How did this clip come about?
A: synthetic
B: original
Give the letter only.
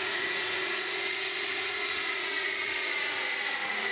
A